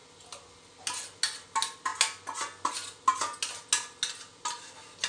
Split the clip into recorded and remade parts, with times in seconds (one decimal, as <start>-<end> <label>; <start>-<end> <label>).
0.0-5.1 recorded